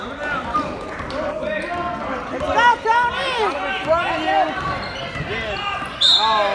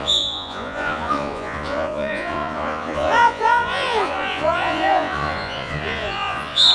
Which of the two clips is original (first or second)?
first